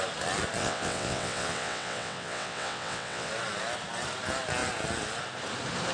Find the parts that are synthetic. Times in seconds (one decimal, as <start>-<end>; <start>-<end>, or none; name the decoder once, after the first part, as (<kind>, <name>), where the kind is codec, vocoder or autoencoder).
0.6-3.3 (vocoder, WaveNeXt)